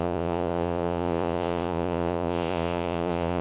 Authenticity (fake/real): fake